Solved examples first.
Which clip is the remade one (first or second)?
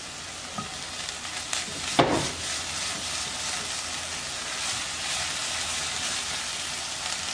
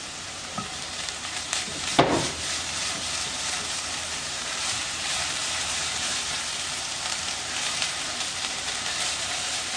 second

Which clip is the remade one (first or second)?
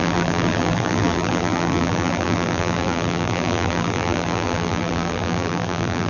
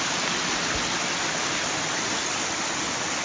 first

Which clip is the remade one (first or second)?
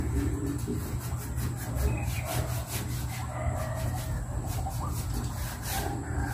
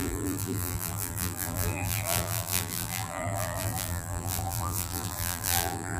second